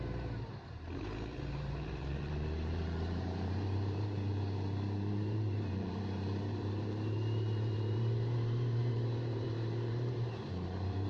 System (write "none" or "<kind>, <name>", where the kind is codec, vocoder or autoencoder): vocoder, BigVGAN v2